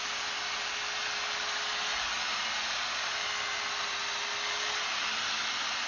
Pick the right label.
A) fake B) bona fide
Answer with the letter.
B